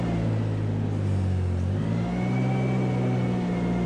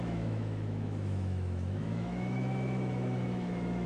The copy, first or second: second